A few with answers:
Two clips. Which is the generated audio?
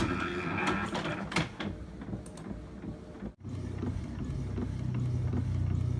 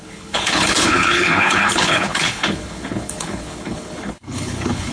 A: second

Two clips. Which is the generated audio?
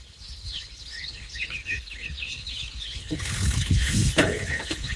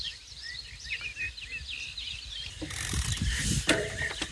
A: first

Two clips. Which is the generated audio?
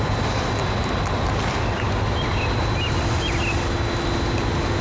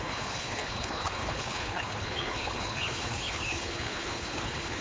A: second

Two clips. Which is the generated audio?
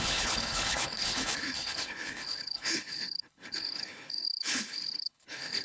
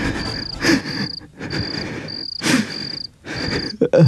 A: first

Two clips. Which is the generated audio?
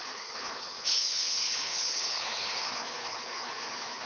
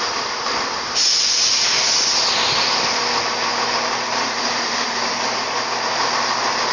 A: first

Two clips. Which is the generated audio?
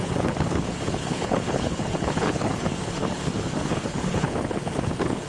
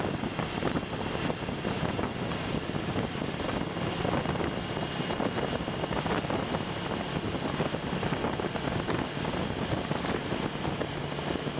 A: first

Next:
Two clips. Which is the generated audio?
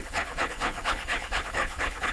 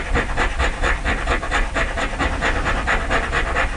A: first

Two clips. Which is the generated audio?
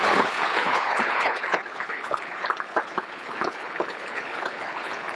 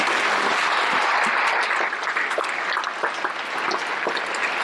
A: first